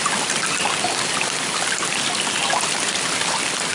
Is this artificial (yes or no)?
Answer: no